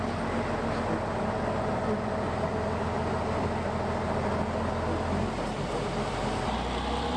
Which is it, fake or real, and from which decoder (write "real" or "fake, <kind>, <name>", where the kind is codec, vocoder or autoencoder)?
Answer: real